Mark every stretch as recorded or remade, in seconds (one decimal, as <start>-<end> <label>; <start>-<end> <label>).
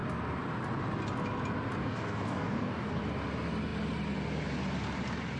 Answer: 0.0-1.8 recorded; 1.8-3.0 remade; 3.0-5.4 recorded